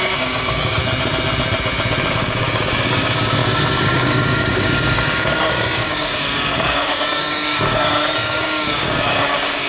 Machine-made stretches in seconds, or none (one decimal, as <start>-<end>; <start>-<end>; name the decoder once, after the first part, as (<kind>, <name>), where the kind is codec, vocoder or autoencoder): 0.0-0.8 (codec, DAC); 2.1-9.7